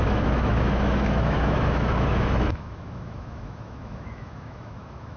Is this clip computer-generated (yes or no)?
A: yes